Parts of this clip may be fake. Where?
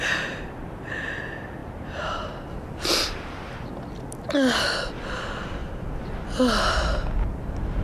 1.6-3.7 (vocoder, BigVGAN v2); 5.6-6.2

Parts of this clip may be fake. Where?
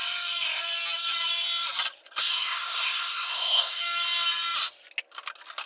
2.2-3.8 (codec, SNAC)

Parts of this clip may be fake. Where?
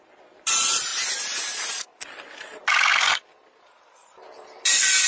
0.0-0.9 (vocoder, BigVGAN v2); 1.7-2.9; 4.4-5.1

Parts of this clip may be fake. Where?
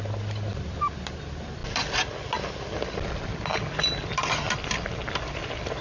none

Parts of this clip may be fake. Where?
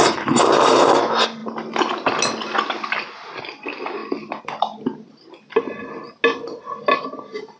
none